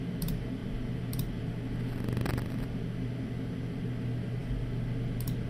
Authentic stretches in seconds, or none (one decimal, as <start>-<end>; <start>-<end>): 0.0-5.5